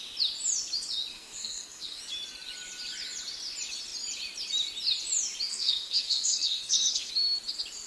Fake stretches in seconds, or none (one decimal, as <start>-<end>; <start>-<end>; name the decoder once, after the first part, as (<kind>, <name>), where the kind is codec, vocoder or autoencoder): 1.1-2.0 (codec, SNAC); 5.5-7.1